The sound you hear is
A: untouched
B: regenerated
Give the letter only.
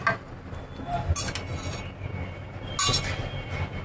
A